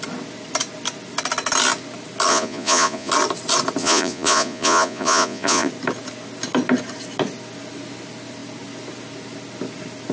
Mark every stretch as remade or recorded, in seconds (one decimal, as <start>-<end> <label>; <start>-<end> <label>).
0.0-2.3 recorded; 2.3-3.1 remade; 3.1-3.8 recorded; 3.8-5.7 remade; 5.7-10.1 recorded